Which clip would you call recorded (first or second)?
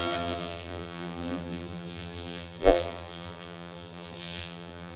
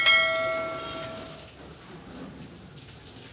second